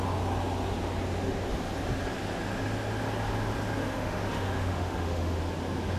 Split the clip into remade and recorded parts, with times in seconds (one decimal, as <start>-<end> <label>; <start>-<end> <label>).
0.0-3.8 recorded; 3.8-5.4 remade; 5.4-6.0 recorded